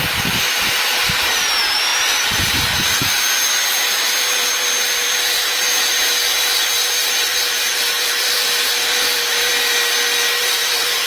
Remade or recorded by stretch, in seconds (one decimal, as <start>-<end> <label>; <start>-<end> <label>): 0.0-9.5 remade; 9.5-10.4 recorded; 10.4-11.1 remade